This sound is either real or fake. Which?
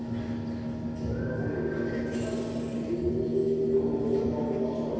real